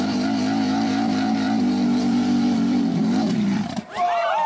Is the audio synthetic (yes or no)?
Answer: yes